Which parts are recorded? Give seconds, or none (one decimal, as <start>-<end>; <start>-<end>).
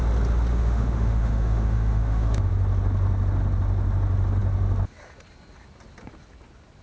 0.0-0.5; 2.5-6.8